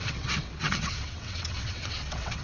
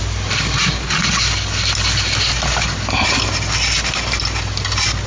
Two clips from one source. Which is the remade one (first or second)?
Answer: first